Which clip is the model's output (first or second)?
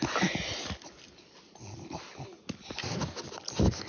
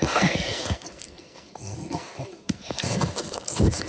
second